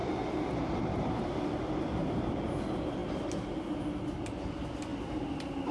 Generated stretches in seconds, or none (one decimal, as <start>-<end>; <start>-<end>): none